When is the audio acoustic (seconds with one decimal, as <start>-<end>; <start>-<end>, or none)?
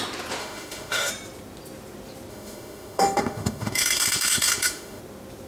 0.0-0.4; 1.1-2.3; 5.0-5.5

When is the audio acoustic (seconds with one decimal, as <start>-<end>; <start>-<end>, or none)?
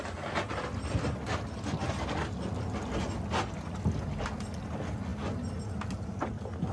0.0-6.7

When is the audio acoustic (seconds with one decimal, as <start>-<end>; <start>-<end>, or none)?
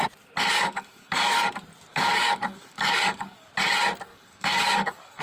0.0-0.5; 1.5-1.9; 3.5-4.1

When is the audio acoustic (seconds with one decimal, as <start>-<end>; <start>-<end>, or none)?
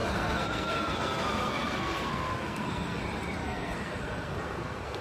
3.0-3.4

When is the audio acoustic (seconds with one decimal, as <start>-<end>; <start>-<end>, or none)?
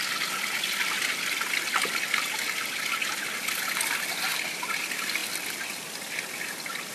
0.0-6.9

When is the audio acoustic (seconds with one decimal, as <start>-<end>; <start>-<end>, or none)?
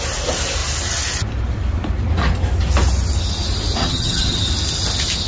0.0-3.8; 4.5-5.3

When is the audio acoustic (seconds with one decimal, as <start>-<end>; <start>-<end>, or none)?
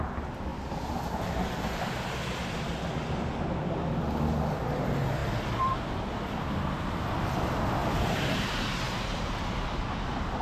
0.0-7.8; 9.3-10.4